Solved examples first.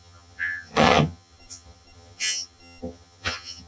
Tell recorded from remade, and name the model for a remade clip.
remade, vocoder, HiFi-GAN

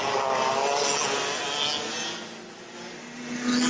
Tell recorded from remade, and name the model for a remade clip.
recorded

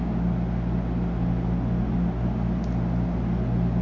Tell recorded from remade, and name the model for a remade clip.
recorded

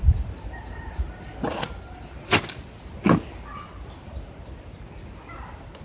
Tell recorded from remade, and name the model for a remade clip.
recorded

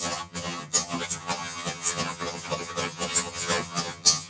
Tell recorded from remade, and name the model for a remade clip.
remade, vocoder, HiFi-GAN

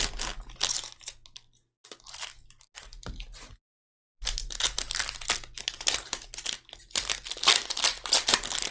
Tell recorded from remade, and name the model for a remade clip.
recorded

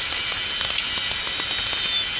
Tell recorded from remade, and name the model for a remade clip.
recorded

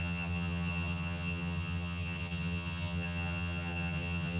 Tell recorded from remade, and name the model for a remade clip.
remade, vocoder, HiFi-GAN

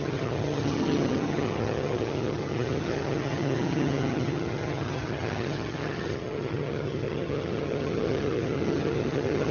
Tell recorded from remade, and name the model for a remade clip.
remade, vocoder, HiFi-GAN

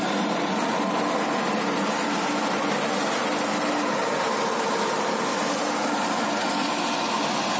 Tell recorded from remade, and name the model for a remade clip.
recorded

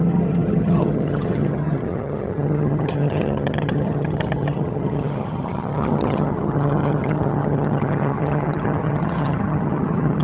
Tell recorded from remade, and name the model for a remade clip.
remade, vocoder, HiFi-GAN